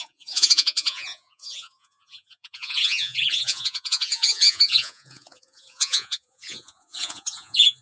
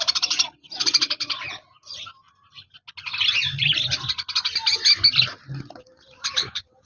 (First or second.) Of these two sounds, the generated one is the first